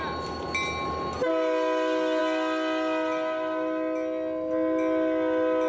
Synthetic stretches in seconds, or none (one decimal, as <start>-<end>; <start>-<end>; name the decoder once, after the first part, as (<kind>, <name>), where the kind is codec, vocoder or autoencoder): none